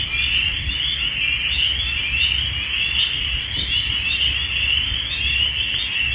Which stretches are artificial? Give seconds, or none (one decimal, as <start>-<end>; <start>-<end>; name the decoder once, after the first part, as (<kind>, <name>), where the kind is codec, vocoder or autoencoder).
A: none